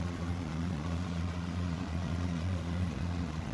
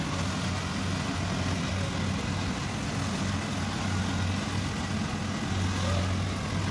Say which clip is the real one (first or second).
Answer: second